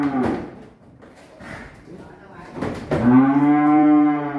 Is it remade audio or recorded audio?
remade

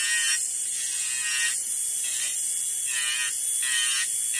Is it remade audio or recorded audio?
recorded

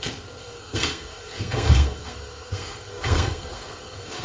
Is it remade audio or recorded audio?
remade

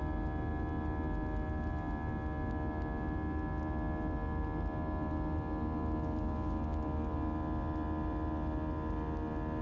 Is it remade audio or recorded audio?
recorded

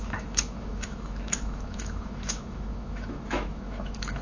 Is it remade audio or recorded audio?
remade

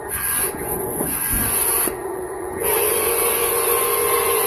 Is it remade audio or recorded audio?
remade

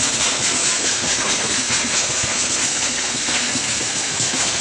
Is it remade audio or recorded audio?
remade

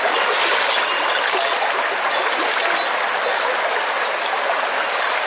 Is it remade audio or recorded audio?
recorded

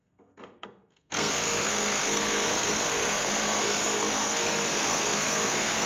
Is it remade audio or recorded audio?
remade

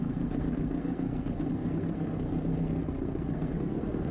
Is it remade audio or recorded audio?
remade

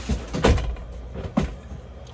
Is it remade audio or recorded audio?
recorded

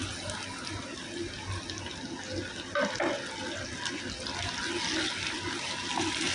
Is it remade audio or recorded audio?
recorded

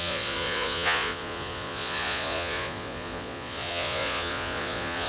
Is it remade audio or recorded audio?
remade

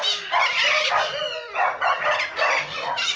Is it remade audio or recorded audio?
recorded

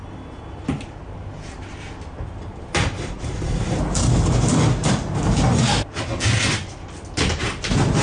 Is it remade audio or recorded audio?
recorded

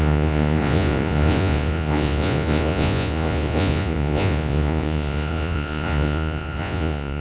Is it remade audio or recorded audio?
remade